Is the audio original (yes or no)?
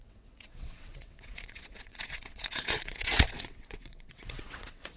no